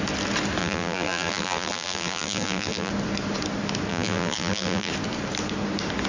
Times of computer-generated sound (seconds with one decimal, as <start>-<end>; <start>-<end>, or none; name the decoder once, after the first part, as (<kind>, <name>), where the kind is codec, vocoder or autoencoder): 0.6-2.9 (vocoder, BigVGAN v2); 3.9-4.9